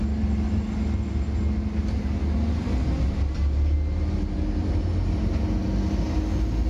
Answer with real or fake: real